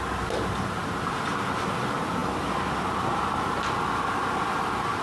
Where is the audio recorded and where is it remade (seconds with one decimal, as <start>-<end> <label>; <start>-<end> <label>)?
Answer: 0.0-5.0 recorded